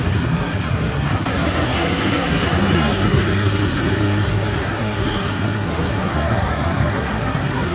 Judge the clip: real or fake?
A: fake